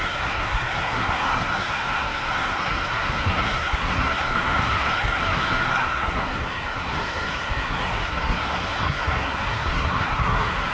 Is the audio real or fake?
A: fake